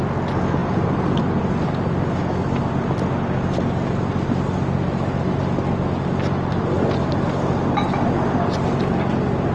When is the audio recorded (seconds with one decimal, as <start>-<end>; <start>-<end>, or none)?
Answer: 0.0-9.5